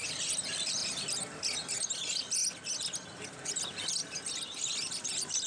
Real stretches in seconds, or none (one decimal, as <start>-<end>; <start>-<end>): 0.0-5.5